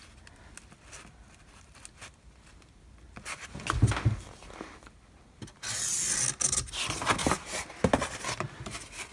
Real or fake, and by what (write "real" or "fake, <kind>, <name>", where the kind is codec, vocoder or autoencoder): real